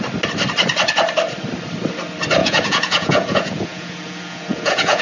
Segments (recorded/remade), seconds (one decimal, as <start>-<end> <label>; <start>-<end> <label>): 0.0-2.4 recorded; 2.4-5.0 remade